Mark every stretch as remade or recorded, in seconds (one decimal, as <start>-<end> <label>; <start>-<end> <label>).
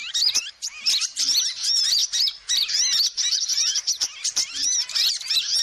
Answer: 0.0-5.6 remade